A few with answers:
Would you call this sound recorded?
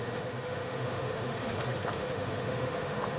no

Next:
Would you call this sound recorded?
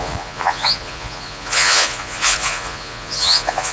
no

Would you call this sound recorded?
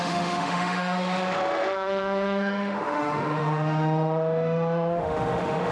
no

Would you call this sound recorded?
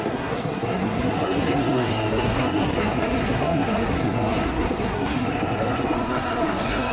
no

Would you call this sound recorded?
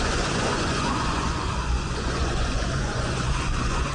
no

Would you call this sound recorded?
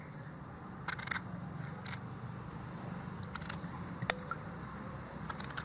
yes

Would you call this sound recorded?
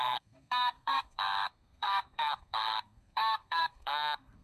no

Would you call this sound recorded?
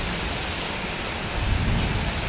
yes